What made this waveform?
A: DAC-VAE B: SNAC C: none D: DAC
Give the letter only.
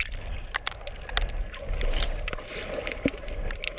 C